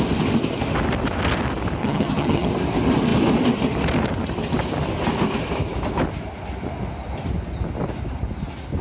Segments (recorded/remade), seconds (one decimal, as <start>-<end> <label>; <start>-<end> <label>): 0.0-1.8 recorded; 1.8-2.5 remade; 2.5-8.8 recorded